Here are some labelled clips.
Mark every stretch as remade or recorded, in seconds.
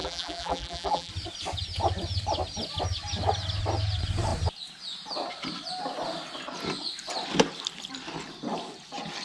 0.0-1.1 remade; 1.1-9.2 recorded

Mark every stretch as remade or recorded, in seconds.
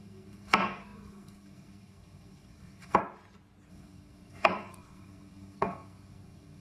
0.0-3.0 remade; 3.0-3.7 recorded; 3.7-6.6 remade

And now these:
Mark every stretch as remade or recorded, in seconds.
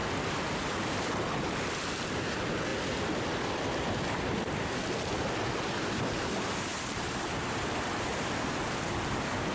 0.0-2.7 remade; 2.7-3.5 recorded; 3.5-6.7 remade; 6.7-7.4 recorded; 7.4-9.5 remade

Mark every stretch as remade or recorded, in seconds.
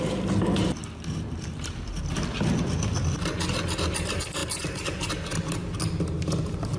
0.0-6.8 recorded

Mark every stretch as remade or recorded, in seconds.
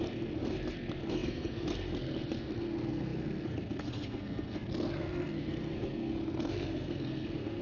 0.0-7.6 remade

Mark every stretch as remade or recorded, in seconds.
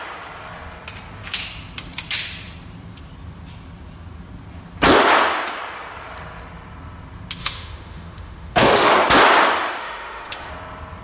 0.0-7.4 recorded; 7.4-8.9 remade; 8.9-9.8 recorded; 9.8-10.5 remade; 10.5-11.0 recorded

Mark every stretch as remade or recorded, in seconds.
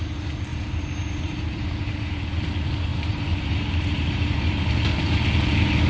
0.0-0.5 recorded; 0.5-2.2 remade; 2.2-2.9 recorded; 2.9-4.7 remade; 4.7-5.9 recorded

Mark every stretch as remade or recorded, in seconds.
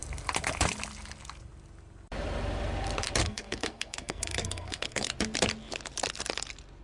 0.0-3.2 recorded; 3.2-5.1 remade; 5.1-6.8 recorded